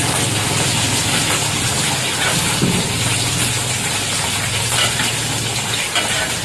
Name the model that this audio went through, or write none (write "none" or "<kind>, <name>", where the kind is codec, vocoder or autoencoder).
none